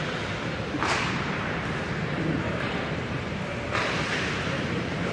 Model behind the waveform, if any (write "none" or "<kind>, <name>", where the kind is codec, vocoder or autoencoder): vocoder, BigVGAN v2